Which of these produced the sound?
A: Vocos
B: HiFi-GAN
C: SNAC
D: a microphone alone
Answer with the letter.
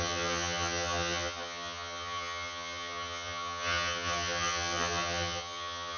B